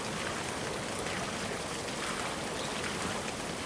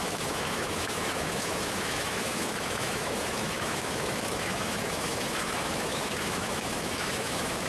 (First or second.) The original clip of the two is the first